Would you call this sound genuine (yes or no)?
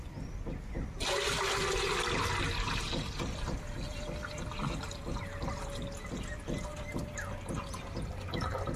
yes